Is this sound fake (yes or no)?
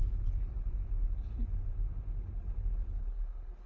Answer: no